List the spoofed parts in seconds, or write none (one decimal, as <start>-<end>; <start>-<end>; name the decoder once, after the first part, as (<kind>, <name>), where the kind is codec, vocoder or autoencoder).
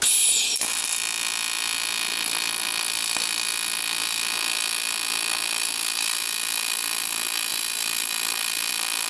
none